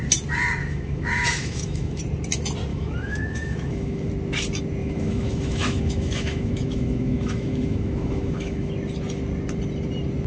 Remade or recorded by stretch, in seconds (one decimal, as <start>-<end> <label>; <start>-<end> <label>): 0.0-0.6 recorded; 0.6-2.0 remade; 2.0-2.7 recorded; 2.7-4.1 remade; 4.1-4.8 recorded; 4.8-8.7 remade; 8.7-10.3 recorded